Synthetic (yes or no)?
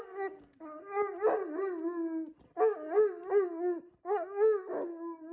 no